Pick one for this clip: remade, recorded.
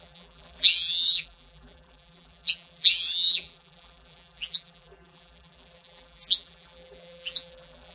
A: remade